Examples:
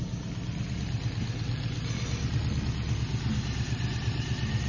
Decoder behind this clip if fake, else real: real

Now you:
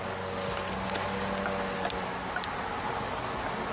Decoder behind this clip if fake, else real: real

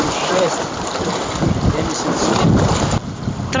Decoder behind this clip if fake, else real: real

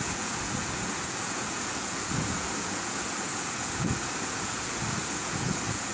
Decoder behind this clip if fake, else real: fake, vocoder, Vocos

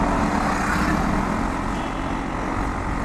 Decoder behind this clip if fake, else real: real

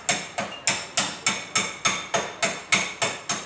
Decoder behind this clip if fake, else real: real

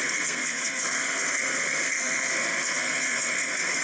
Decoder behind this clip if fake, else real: fake, codec, SNAC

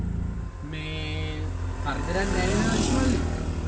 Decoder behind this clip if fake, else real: real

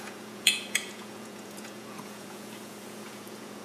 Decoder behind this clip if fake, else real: fake, vocoder, Vocos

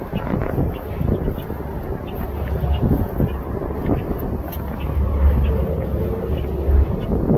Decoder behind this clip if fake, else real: real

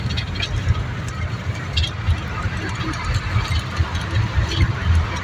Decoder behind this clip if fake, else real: real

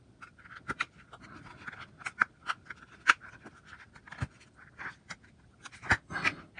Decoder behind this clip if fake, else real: real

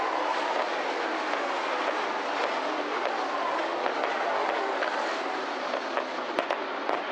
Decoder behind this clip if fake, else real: real